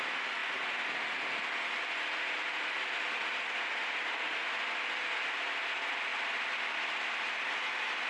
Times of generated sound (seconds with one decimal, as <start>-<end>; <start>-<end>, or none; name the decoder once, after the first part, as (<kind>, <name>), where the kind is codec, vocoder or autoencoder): none